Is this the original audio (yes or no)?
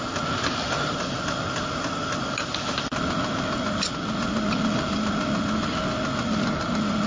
yes